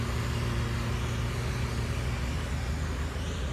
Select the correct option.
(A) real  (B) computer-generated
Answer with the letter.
A